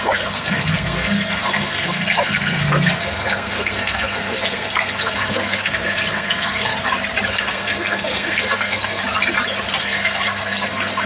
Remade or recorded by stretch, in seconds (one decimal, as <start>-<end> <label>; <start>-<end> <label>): 0.0-6.7 remade; 6.7-7.3 recorded; 7.3-9.0 remade; 9.0-9.8 recorded; 9.8-11.1 remade